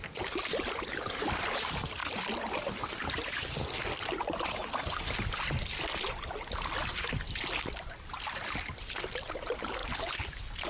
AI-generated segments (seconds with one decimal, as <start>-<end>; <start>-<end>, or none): 0.0-2.0; 6.9-9.8